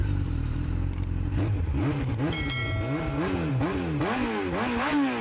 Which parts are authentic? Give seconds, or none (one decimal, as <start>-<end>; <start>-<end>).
1.4-5.2